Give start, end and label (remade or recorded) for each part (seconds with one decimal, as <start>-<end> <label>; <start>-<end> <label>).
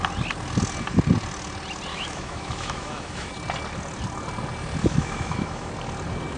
0.0-1.9 recorded; 1.9-3.3 remade; 3.3-4.8 recorded; 4.8-5.7 remade; 5.7-6.4 recorded